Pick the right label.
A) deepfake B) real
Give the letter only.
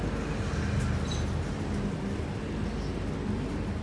B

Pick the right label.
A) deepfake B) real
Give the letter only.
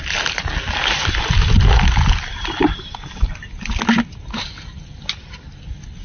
B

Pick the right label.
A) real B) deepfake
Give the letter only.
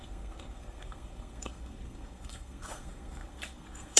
B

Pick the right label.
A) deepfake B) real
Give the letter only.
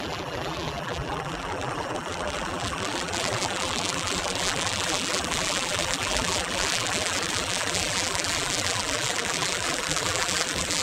A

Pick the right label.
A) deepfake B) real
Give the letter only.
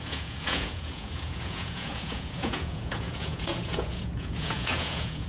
A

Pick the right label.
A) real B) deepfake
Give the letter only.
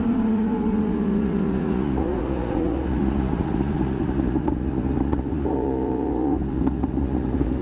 B